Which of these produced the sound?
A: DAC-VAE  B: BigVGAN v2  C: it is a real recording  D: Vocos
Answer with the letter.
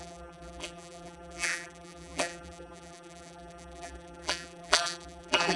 B